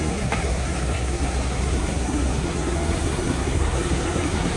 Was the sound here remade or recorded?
remade